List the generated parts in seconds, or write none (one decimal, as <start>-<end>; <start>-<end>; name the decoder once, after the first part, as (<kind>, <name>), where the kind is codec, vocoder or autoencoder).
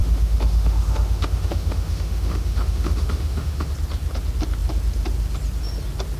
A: 0.0-3.7 (autoencoder, DAC-VAE)